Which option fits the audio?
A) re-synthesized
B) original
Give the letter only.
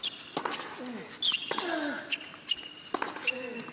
B